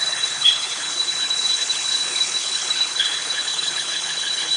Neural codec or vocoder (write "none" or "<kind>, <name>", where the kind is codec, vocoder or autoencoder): codec, HILCodec